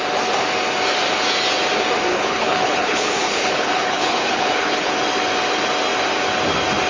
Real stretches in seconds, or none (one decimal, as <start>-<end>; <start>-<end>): 0.0-2.1; 4.9-6.9